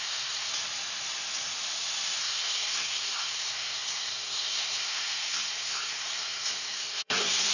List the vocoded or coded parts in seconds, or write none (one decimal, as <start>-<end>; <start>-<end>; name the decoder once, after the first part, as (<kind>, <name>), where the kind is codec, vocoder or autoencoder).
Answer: 0.0-0.5 (codec, SNAC); 2.2-7.5